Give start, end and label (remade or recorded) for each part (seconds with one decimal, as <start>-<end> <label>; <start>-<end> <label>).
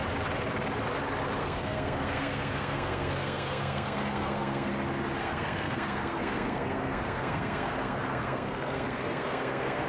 0.0-1.4 recorded; 1.4-4.7 remade; 4.7-5.2 recorded; 5.2-9.9 remade